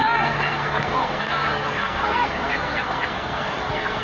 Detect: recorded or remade remade